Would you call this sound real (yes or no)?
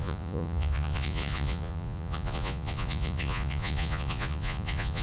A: no